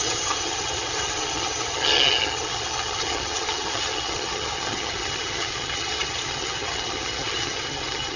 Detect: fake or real fake